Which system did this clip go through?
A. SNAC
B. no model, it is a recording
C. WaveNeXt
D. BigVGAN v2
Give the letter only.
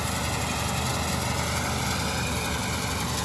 B